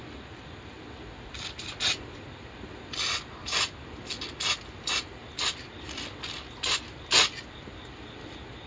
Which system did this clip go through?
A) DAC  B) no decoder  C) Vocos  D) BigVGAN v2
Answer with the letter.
B